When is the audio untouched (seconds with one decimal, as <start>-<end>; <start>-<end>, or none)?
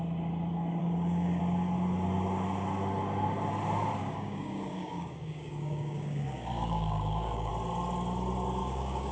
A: 0.0-0.8; 1.4-4.0; 7.5-8.6